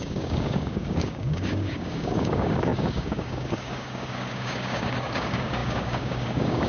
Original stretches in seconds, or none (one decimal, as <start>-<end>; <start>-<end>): none